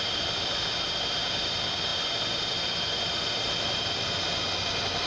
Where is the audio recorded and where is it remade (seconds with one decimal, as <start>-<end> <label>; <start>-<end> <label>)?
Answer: 0.0-5.1 recorded